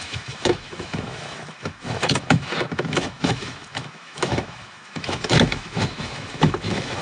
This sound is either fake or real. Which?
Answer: fake